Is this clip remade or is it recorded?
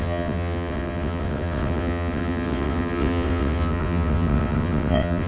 remade